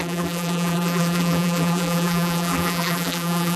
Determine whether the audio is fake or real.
fake